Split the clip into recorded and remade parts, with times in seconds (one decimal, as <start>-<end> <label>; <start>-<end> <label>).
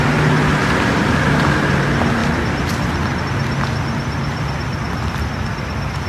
0.0-6.1 recorded